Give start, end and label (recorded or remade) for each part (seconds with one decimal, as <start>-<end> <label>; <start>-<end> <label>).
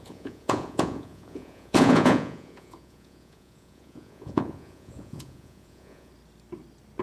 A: 0.0-6.1 remade; 6.1-7.0 recorded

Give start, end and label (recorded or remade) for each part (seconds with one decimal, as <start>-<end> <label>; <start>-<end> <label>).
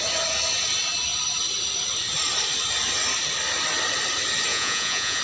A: 0.0-4.5 recorded; 4.5-5.2 remade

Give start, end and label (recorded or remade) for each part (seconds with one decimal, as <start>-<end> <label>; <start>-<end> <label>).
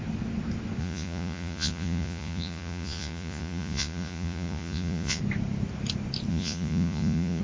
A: 0.0-0.8 recorded; 0.8-5.2 remade; 5.2-6.3 recorded; 6.3-7.4 remade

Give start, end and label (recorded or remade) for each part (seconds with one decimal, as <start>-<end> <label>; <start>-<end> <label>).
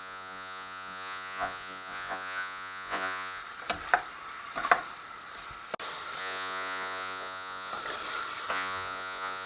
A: 0.0-3.4 remade; 3.4-6.2 recorded; 6.2-7.7 remade; 7.7-8.5 recorded; 8.5-9.5 remade